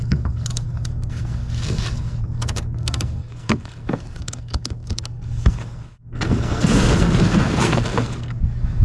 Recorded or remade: remade